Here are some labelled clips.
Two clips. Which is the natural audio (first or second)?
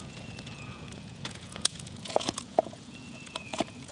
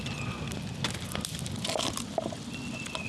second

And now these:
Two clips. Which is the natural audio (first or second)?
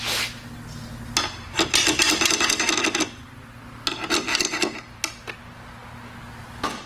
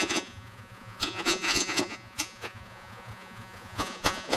first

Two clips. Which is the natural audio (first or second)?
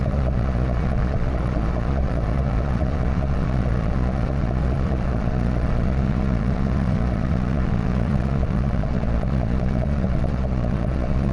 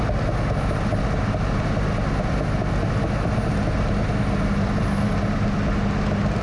second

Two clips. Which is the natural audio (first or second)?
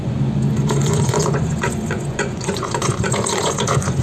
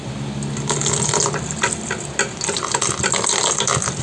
second